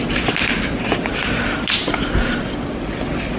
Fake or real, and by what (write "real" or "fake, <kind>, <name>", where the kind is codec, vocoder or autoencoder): real